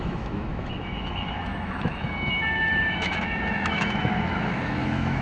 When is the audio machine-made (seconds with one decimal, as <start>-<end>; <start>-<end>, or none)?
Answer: 0.0-5.2